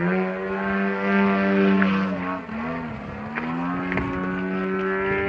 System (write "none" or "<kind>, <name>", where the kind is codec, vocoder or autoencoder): none